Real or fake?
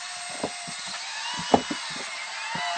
real